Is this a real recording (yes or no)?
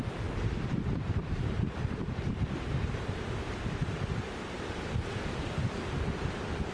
yes